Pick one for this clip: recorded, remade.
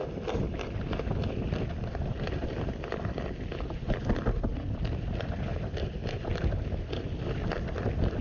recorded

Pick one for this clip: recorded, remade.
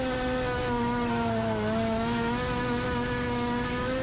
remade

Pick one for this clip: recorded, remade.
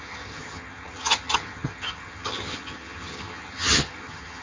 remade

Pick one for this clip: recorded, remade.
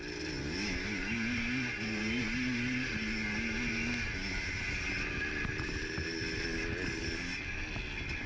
recorded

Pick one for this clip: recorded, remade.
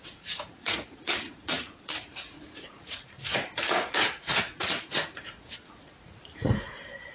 remade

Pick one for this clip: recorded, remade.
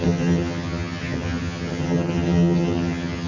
remade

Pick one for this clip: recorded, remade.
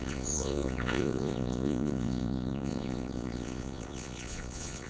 remade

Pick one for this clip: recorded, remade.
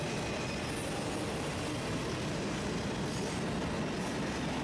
recorded